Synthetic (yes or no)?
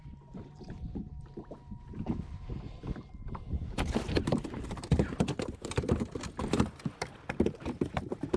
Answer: yes